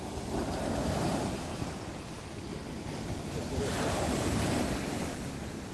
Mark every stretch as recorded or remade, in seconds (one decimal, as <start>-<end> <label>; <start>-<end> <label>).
0.0-1.5 remade; 1.5-3.6 recorded; 3.6-5.7 remade

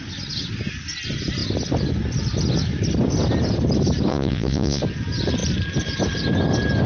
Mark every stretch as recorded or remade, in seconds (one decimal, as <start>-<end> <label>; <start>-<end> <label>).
0.0-4.1 recorded; 4.1-4.8 remade; 4.8-6.9 recorded

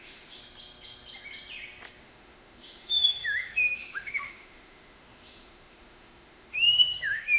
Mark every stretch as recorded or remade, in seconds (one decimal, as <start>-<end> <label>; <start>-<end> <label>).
0.0-0.4 remade; 0.4-2.0 recorded; 2.0-7.4 remade

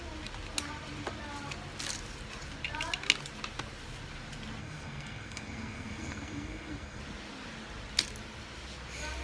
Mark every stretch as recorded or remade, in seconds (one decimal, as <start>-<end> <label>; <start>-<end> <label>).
0.0-4.6 recorded; 4.6-7.0 remade; 7.0-9.2 recorded

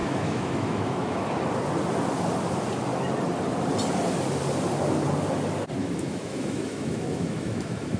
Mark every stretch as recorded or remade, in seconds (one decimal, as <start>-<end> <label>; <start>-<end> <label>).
0.0-1.3 remade; 1.3-5.8 recorded; 5.8-8.0 remade

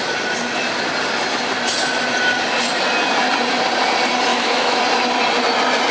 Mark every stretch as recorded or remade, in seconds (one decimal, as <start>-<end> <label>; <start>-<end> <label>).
0.0-4.3 recorded; 4.3-4.8 remade; 4.8-5.9 recorded

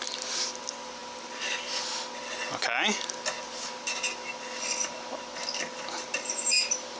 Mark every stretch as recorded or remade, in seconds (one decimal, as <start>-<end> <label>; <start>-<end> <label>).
0.0-7.0 recorded

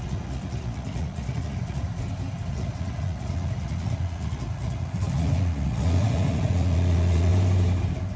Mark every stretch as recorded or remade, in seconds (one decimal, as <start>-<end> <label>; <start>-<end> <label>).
0.0-1.9 remade; 1.9-2.5 recorded; 2.5-7.3 remade; 7.3-8.2 recorded